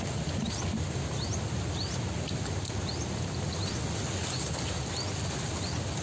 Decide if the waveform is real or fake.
real